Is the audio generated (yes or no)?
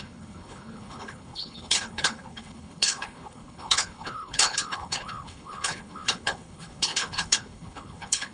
yes